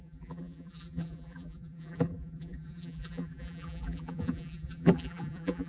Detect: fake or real fake